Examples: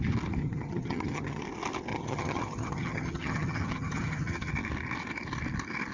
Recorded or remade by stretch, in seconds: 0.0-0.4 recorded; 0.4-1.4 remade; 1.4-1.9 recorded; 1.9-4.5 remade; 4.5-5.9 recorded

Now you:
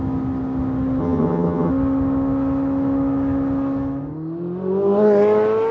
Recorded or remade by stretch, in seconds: 0.0-1.0 recorded; 1.0-1.7 remade; 1.7-5.7 recorded

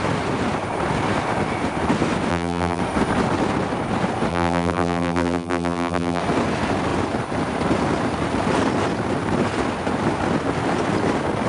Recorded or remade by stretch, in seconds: 0.0-2.3 recorded; 2.3-2.8 remade; 2.8-4.3 recorded; 4.3-6.2 remade; 6.2-11.5 recorded

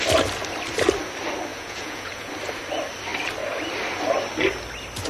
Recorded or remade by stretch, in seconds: 0.0-1.5 recorded; 1.5-2.3 remade; 2.3-5.1 recorded

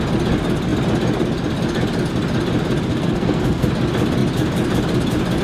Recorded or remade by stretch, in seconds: 0.0-2.9 recorded; 2.9-3.7 remade; 3.7-5.4 recorded

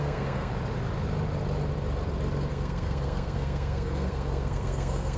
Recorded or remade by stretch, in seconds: 0.0-0.5 remade; 0.5-2.5 recorded; 2.5-5.2 remade

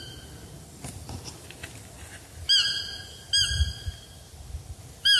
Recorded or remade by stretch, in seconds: 0.0-5.2 recorded

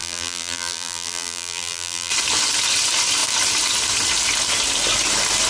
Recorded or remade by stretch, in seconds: 0.0-2.1 remade; 2.1-5.5 recorded